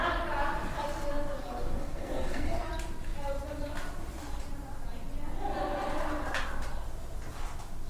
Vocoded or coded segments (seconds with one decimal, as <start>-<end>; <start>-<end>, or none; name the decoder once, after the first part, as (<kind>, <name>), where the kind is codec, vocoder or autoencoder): 1.4-2.7 (codec, SNAC)